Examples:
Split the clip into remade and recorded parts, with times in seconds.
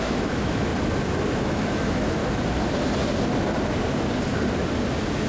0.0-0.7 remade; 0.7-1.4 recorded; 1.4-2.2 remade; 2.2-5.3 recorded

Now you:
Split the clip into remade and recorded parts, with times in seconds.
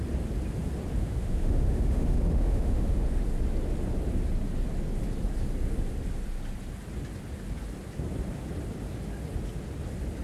0.0-1.0 recorded; 1.0-3.2 remade; 3.2-10.2 recorded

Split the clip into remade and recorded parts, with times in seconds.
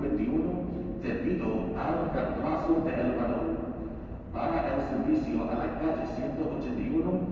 0.0-2.0 recorded; 2.0-4.6 remade; 4.6-5.0 recorded; 5.0-7.3 remade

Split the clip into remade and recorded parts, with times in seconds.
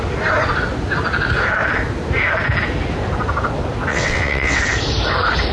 0.0-3.9 recorded; 3.9-4.6 remade; 4.6-5.5 recorded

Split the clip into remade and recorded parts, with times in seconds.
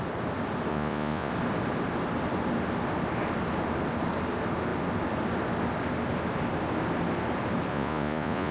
0.0-0.7 recorded; 0.7-1.3 remade; 1.3-7.7 recorded; 7.7-8.5 remade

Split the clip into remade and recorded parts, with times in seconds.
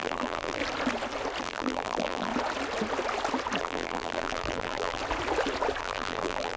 0.0-0.6 remade; 0.6-1.4 recorded; 1.4-2.3 remade; 2.3-3.6 recorded; 3.6-5.0 remade; 5.0-5.8 recorded; 5.8-6.6 remade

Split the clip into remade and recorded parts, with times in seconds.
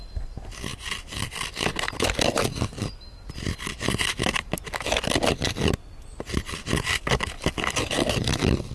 0.0-8.7 recorded